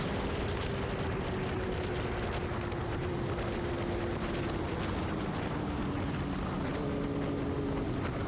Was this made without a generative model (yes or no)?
yes